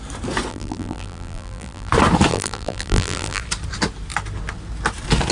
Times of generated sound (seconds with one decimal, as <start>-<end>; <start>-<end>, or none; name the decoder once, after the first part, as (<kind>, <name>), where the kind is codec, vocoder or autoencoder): 0.5-1.9 (vocoder, BigVGAN v2); 2.3-3.4